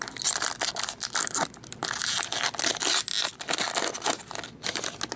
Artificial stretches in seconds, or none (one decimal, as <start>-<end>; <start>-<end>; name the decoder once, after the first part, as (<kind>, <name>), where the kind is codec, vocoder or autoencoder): none